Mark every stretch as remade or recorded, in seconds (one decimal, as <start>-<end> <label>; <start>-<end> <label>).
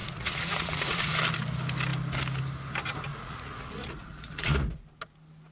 0.0-1.1 remade; 1.1-3.1 recorded; 3.1-4.8 remade; 4.8-5.5 recorded